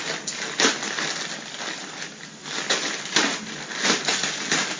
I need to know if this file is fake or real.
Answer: real